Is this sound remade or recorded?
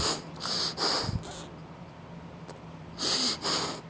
recorded